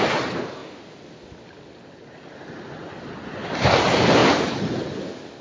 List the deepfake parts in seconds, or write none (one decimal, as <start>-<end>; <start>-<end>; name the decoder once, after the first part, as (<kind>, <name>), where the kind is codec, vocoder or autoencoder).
none